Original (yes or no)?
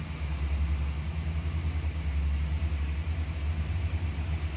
yes